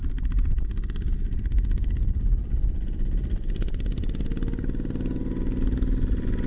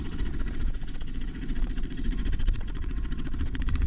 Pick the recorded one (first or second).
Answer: first